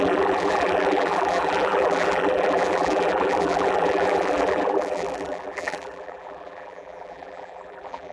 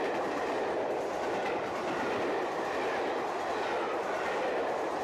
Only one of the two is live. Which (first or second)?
second